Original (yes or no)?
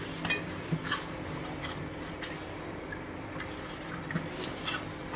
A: no